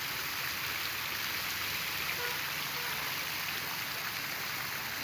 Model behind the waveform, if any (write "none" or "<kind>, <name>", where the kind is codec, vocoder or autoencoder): none